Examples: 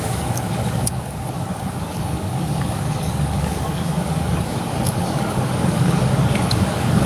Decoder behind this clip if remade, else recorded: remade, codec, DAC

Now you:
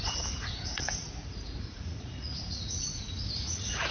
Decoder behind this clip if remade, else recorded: remade, vocoder, Vocos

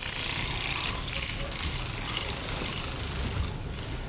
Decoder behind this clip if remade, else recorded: recorded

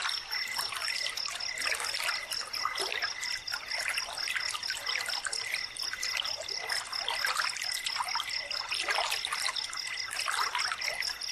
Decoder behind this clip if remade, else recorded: recorded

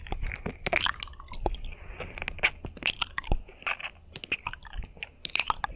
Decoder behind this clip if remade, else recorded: recorded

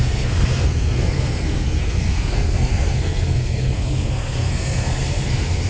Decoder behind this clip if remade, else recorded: remade, codec, SNAC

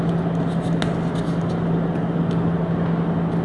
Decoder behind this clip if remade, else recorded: recorded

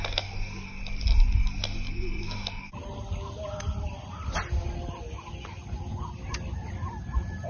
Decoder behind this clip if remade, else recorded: recorded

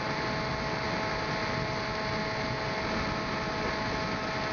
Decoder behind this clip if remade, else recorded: recorded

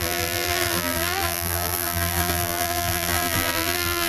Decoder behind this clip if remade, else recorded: remade, vocoder, BigVGAN v2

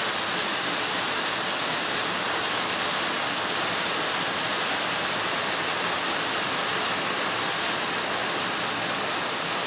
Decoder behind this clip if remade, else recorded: recorded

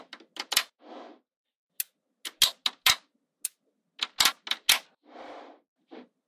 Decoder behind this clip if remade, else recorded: recorded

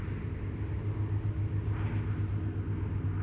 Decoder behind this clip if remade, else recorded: recorded